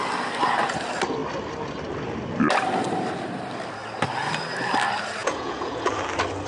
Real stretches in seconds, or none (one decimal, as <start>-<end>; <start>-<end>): 0.0-5.2; 5.9-6.5